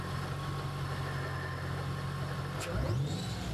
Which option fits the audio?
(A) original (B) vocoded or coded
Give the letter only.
A